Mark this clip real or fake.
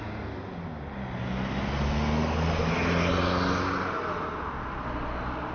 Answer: real